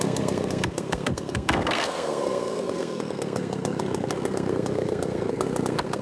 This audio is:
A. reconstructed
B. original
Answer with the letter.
A